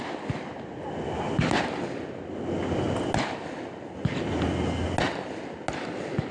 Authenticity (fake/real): real